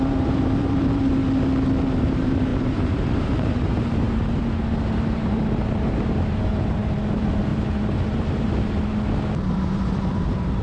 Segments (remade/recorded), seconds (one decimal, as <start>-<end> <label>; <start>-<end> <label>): 0.0-1.2 remade; 1.2-2.0 recorded; 2.0-8.9 remade; 8.9-9.5 recorded; 9.5-10.6 remade